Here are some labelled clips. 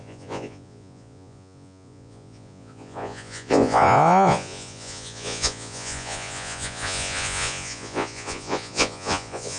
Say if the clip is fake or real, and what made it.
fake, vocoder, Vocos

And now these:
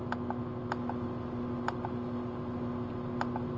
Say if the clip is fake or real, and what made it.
real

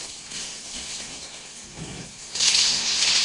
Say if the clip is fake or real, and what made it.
fake, codec, SNAC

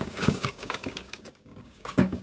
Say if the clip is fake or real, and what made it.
fake, codec, DAC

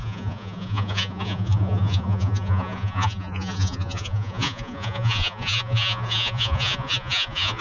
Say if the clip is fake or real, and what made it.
fake, vocoder, Vocos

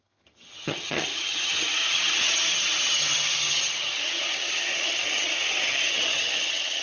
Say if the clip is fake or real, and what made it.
fake, vocoder, HiFi-GAN